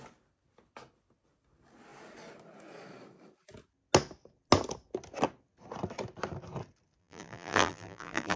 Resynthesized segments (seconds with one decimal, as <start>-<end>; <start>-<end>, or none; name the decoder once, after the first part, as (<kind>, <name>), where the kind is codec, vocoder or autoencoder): 7.0-8.4 (vocoder, BigVGAN v2)